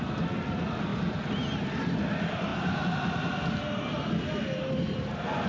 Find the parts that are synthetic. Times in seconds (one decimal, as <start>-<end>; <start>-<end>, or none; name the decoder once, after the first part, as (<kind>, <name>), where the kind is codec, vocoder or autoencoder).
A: none